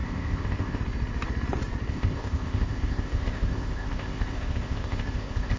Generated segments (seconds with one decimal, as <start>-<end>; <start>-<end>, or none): 0.0-0.8; 1.9-5.6